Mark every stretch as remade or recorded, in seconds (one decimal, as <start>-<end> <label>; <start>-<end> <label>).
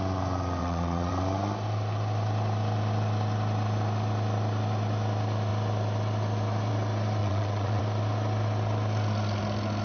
0.0-0.6 recorded; 0.6-1.1 remade; 1.1-7.2 recorded; 7.2-7.8 remade; 7.8-9.8 recorded